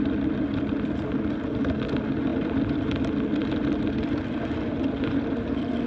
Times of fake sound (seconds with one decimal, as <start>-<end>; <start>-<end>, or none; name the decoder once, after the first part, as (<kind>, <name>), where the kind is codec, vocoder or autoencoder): none